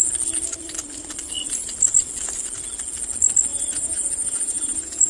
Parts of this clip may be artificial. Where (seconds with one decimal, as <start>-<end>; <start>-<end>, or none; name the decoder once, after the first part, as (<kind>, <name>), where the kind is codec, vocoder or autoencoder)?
3.5-5.1 (vocoder, Vocos)